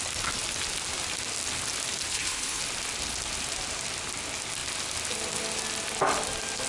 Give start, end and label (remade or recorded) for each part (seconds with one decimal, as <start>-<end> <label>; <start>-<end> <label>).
0.0-2.1 recorded; 2.1-2.6 remade; 2.6-6.7 recorded